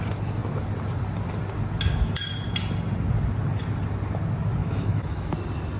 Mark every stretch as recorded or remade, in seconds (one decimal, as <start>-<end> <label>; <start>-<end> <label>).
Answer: 0.0-4.6 recorded; 4.6-5.3 remade; 5.3-5.8 recorded